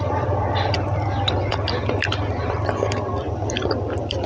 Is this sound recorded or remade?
remade